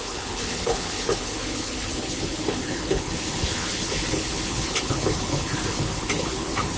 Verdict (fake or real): fake